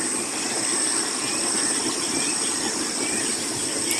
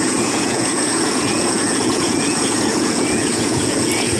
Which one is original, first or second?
first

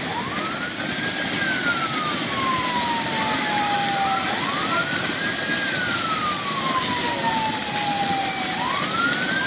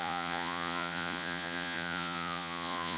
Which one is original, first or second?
first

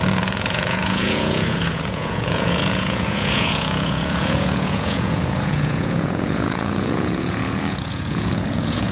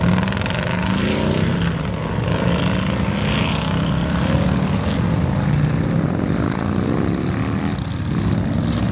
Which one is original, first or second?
second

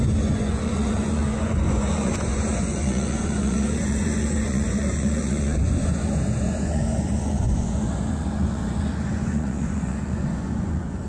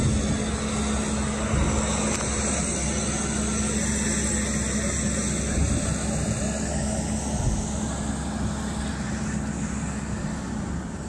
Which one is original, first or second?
second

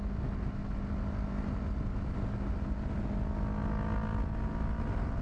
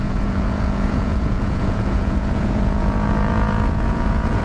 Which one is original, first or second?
first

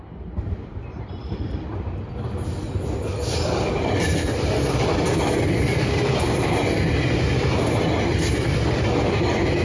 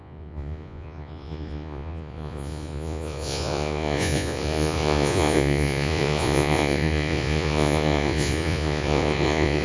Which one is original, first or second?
first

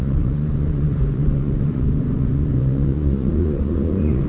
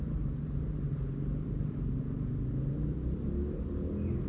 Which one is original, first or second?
second